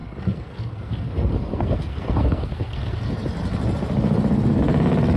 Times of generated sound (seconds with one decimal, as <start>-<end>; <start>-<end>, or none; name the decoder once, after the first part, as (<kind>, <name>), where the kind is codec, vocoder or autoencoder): 0.0-3.1 (codec, SNAC)